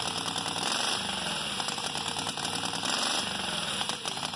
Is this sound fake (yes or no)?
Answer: yes